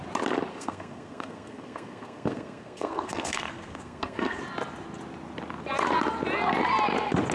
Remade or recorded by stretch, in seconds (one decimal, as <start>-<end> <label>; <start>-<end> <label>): 0.0-0.5 recorded; 0.5-4.4 remade; 4.4-7.3 recorded

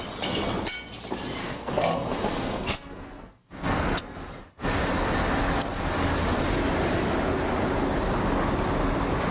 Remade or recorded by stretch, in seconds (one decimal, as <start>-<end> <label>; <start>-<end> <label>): 0.0-1.4 recorded; 1.4-4.4 remade; 4.4-9.3 recorded